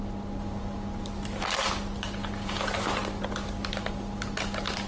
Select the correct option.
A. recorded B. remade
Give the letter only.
A